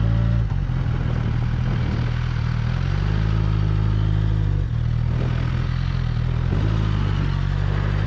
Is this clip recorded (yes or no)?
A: yes